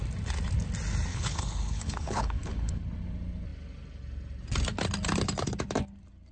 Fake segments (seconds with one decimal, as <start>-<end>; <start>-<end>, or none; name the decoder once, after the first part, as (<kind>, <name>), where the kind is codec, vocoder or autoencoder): 1.1-2.8 (codec, HILCodec)